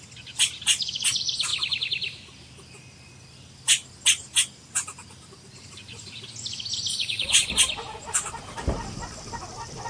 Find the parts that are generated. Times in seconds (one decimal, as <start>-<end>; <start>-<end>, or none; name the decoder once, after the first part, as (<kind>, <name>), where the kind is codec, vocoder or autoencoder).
6.9-7.5 (vocoder, Vocos)